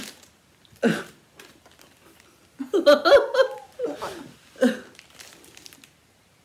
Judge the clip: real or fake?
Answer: real